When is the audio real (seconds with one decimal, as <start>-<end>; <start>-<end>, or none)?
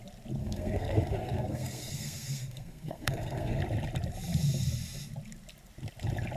0.0-0.4; 3.6-6.4